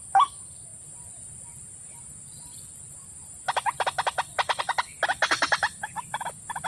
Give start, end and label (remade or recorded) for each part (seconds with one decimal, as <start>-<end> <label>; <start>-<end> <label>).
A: 0.0-6.7 recorded